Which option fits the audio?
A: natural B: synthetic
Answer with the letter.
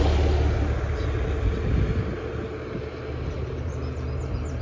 A